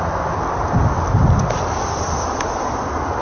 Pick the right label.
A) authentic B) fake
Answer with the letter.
A